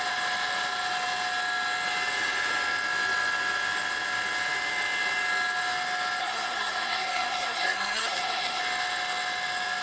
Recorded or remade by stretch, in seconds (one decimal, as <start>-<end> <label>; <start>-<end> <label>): 0.0-6.2 recorded; 6.2-8.6 remade; 8.6-9.8 recorded